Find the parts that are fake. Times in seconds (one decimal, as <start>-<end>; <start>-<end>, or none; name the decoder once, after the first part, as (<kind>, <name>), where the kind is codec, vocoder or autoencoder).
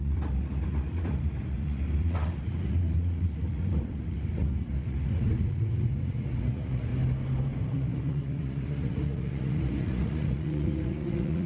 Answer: 0.0-6.9 (vocoder, Vocos); 7.6-11.5